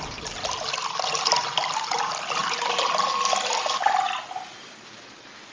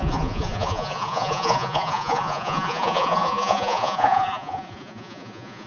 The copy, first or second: second